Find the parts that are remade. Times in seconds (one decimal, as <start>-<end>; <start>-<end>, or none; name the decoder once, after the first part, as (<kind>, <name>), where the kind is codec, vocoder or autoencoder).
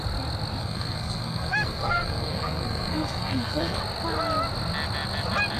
0.6-3.8 (codec, SNAC)